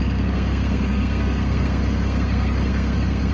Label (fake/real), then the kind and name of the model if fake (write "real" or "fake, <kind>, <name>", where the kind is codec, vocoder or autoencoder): fake, codec, SNAC